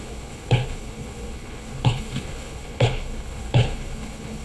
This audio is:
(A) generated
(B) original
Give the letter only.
A